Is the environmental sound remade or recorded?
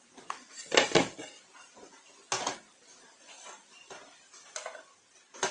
recorded